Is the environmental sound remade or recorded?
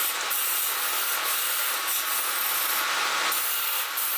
remade